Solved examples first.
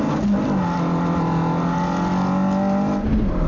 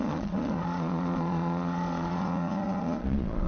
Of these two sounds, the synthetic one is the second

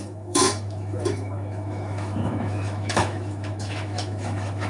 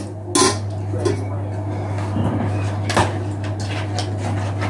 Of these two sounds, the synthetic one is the first